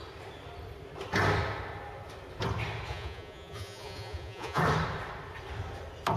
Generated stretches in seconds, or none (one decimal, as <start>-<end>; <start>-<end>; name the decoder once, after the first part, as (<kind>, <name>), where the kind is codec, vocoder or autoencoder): 2.9-4.6 (vocoder, Vocos)